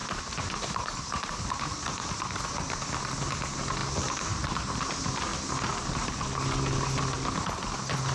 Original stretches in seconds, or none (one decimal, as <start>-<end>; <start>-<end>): 2.2-3.8; 4.8-5.3; 6.1-8.1